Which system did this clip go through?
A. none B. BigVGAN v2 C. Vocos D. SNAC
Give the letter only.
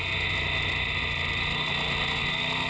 A